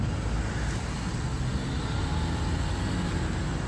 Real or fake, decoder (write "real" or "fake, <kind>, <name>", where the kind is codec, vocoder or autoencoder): real